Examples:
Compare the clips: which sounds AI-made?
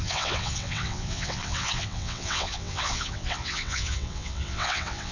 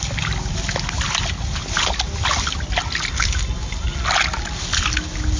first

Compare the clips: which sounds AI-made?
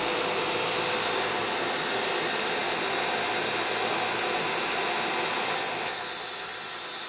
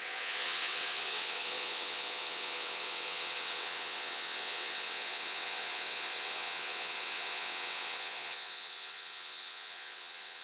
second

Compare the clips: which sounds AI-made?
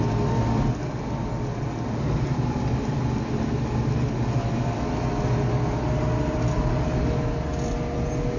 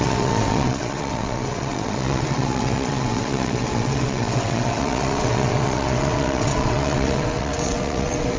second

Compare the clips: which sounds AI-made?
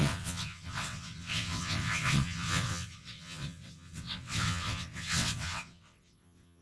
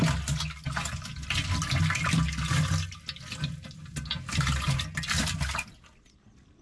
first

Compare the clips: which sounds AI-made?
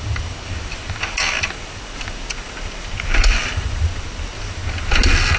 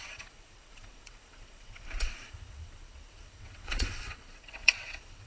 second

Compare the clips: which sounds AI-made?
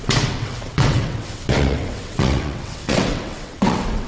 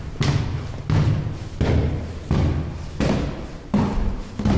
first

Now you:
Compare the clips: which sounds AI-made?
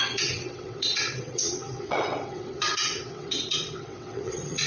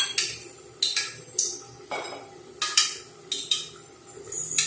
first